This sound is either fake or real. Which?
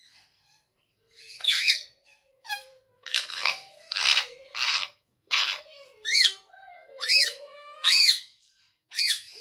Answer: fake